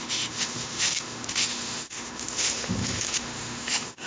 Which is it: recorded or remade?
remade